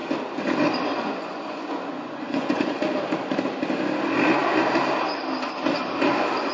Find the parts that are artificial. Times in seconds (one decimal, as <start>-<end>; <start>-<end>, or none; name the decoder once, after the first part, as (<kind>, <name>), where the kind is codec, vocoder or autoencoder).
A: 1.0-2.8 (vocoder, Vocos)